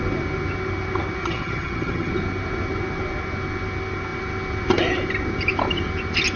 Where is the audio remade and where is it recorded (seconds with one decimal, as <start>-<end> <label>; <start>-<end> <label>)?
0.0-1.2 recorded; 1.2-2.1 remade; 2.1-6.4 recorded